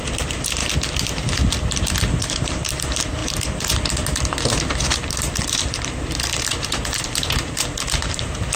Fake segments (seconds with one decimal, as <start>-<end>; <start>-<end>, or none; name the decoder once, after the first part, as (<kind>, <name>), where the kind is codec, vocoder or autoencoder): 0.0-0.6 (vocoder, BigVGAN v2); 2.1-8.6